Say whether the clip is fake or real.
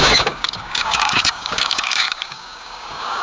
fake